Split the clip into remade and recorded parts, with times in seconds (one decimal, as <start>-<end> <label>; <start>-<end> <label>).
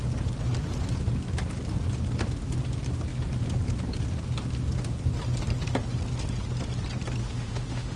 0.0-7.2 recorded; 7.2-8.0 remade